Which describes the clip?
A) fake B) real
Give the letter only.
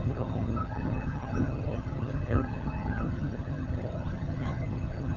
A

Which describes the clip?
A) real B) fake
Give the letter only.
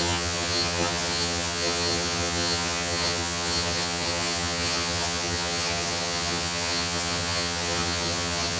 B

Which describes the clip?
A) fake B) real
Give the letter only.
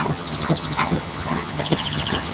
A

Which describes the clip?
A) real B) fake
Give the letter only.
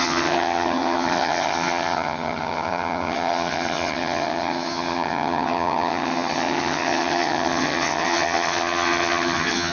B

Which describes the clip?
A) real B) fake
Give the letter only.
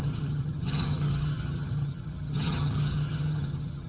B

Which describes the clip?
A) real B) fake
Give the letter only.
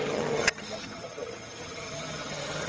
B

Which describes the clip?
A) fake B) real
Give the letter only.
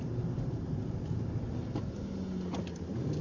B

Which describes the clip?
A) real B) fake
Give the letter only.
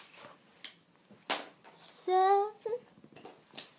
A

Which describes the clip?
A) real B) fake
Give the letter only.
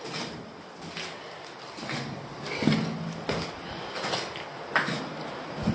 A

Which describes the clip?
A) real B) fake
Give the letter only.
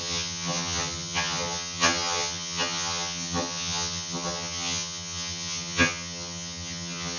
B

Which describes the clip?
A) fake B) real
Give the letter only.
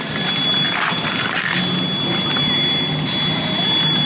B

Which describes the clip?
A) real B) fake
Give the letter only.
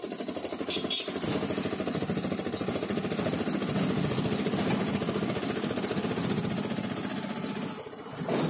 A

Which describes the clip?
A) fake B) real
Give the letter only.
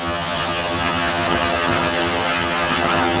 A